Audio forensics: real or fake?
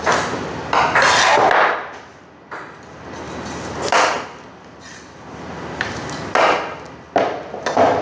real